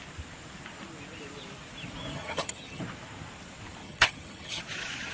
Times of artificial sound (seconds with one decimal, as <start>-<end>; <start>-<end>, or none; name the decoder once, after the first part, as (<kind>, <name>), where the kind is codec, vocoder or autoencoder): 2.1-2.8 (vocoder, HiFi-GAN); 3.8-4.6